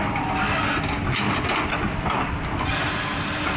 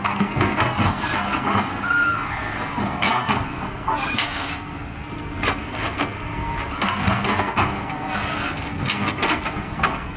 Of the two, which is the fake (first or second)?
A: second